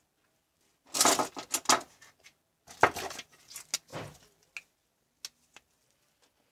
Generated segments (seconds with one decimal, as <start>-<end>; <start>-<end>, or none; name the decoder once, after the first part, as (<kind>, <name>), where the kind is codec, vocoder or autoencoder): none